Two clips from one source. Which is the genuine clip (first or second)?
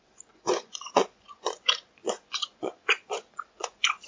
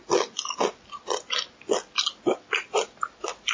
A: second